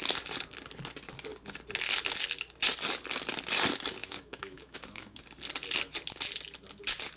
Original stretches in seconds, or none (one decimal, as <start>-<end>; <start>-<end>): 0.0-4.0; 5.2-7.2